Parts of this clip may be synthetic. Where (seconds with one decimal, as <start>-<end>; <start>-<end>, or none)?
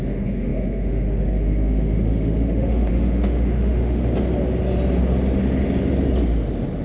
0.0-4.0